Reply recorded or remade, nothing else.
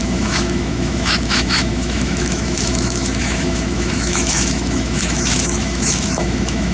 remade